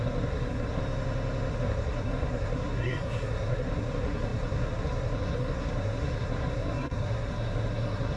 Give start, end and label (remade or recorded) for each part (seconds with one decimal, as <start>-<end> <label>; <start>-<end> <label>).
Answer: 0.0-0.8 remade; 0.8-1.5 recorded; 1.5-8.2 remade